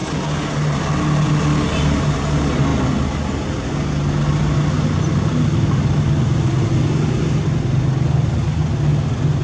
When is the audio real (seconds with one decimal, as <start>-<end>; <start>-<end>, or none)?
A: 0.0-9.4